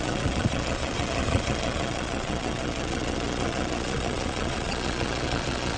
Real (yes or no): no